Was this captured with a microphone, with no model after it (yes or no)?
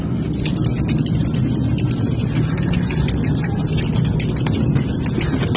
yes